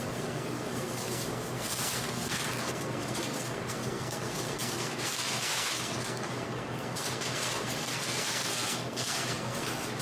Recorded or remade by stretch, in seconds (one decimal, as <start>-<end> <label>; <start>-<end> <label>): 0.0-10.0 remade